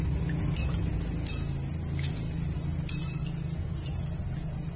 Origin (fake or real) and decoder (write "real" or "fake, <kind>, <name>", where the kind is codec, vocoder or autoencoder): real